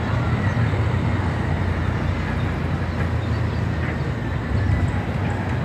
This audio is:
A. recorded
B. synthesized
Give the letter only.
A